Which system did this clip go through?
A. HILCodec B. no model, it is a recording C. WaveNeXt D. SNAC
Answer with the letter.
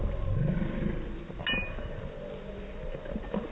B